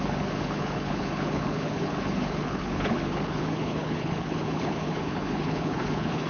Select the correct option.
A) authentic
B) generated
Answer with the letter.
B